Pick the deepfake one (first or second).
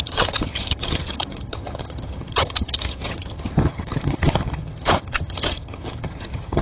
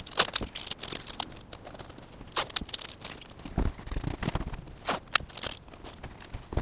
first